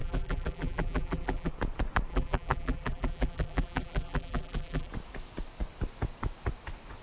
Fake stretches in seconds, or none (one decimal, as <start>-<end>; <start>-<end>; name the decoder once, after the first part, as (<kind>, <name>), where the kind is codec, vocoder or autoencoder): 0.0-1.5 (vocoder, BigVGAN v2); 2.1-4.9